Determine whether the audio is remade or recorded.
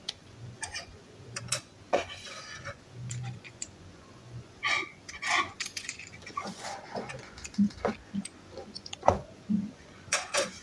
remade